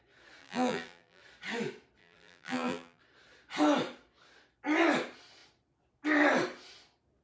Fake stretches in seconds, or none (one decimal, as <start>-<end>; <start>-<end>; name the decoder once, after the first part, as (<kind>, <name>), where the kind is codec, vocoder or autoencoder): 0.4-1.2 (vocoder, BigVGAN v2); 2.0-3.0

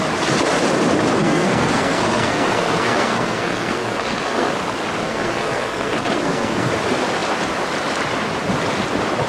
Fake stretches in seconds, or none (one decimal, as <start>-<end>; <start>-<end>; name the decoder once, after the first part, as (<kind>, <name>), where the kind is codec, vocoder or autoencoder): 1.2-4.5 (codec, SNAC); 5.0-6.7